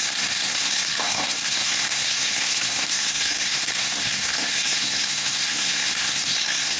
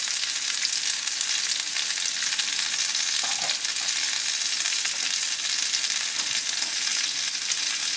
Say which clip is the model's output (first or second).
first